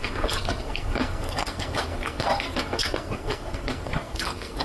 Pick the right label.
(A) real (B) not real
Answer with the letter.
B